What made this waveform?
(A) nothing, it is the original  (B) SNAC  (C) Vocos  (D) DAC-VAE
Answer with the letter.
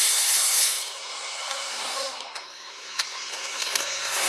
B